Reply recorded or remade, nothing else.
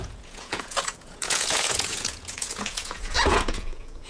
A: remade